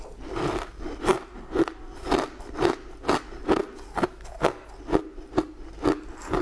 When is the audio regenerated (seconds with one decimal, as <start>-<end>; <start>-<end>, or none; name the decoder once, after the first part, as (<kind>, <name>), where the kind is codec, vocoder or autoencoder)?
none